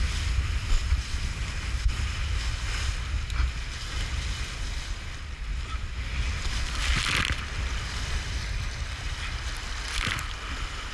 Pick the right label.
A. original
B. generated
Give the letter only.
A